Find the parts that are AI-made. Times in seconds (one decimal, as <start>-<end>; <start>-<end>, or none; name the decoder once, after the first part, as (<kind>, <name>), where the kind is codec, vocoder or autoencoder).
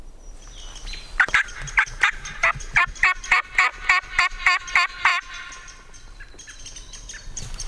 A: none